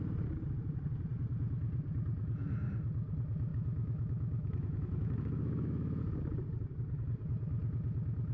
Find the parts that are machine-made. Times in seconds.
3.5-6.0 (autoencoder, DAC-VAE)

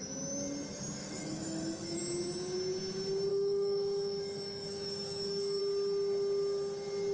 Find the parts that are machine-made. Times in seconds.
1.0-2.0 (autoencoder, DAC-VAE); 3.3-5.6